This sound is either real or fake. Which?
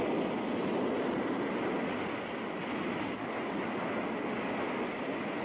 real